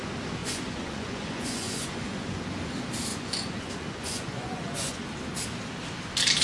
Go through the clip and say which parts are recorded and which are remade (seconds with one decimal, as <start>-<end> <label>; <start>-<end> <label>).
0.0-0.4 recorded; 0.4-2.4 remade; 2.4-3.1 recorded; 3.1-5.0 remade; 5.0-6.4 recorded